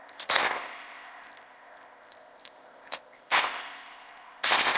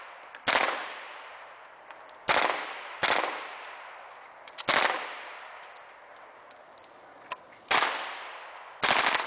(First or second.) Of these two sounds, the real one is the second